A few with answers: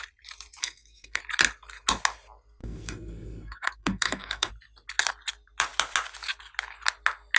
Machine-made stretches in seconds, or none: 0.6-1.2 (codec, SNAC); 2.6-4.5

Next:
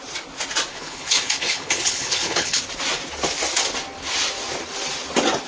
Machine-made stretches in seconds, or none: 0.7-2.6 (codec, HILCodec)

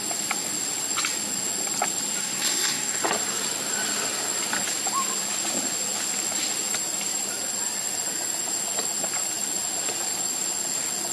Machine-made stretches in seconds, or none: 2.2-3.0 (codec, SNAC)

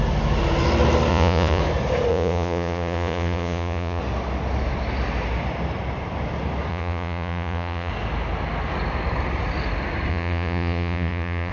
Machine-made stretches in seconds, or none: 1.1-1.6 (vocoder, Vocos); 2.1-4.0; 6.7-7.9; 10.1-11.5

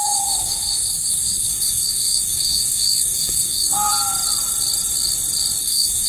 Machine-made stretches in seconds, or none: 0.0-3.9 (codec, DAC); 5.6-6.1